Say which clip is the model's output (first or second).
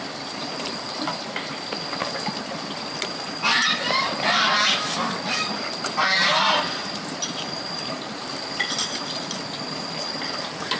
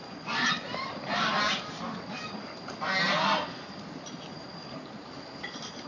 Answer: first